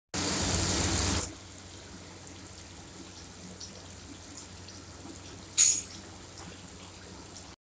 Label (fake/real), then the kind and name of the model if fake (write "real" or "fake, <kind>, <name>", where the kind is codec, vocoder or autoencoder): real